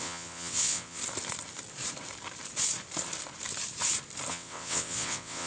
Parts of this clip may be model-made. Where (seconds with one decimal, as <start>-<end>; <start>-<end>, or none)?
0.0-1.0; 4.3-5.5